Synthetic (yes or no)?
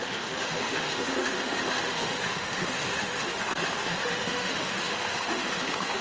yes